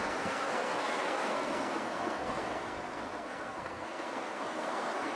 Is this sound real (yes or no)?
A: no